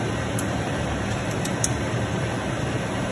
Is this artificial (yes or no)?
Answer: yes